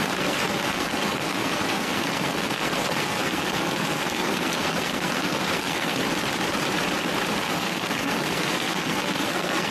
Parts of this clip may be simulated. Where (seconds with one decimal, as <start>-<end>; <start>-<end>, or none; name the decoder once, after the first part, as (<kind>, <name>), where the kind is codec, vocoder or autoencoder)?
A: 0.0-6.0 (codec, SNAC); 7.4-9.7